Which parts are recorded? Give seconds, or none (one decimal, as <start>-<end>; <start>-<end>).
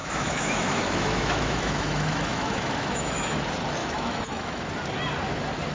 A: 3.4-3.8; 4.6-5.7